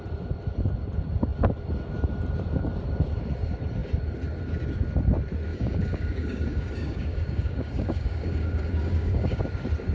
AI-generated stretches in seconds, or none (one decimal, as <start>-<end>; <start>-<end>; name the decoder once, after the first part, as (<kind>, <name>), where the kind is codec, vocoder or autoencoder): 5.5-9.4 (codec, DAC)